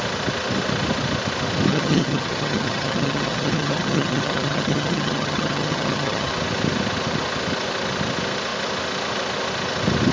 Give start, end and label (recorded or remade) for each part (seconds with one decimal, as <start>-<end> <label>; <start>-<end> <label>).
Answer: 0.0-1.7 recorded; 1.7-6.3 remade; 6.3-10.1 recorded